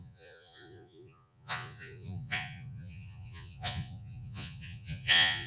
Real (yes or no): no